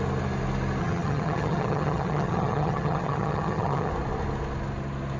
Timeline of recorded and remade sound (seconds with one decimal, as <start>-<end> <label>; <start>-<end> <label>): 0.0-0.8 recorded; 0.8-3.9 remade; 3.9-5.2 recorded